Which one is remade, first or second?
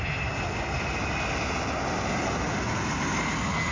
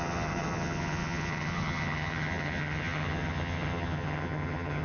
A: second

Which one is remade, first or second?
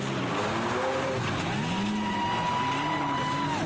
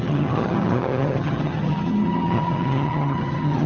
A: second